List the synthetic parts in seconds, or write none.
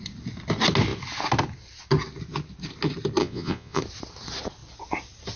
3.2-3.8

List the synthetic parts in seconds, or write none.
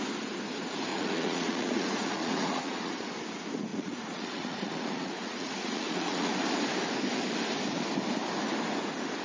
0.9-2.9; 3.7-6.3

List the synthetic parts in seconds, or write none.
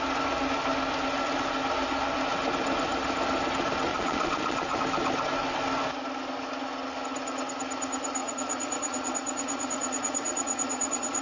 3.9-4.8; 8.2-11.2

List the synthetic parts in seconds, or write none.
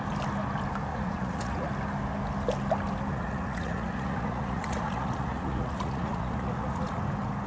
0.9-1.7; 3.1-7.0